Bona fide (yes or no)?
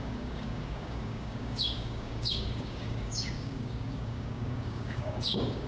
no